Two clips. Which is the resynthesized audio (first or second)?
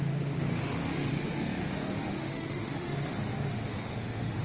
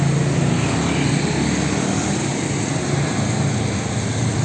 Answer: first